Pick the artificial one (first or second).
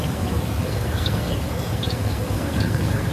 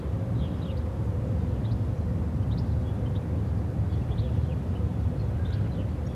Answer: first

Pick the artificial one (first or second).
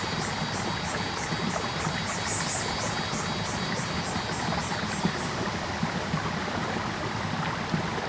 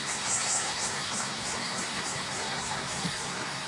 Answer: second